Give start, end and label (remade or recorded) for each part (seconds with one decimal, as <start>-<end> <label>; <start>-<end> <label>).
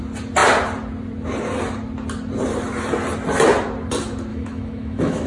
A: 0.0-4.3 recorded; 4.3-5.3 remade